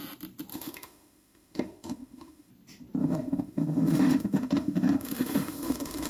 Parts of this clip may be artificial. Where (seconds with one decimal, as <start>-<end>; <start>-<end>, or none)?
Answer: 0.5-2.5; 3.0-6.1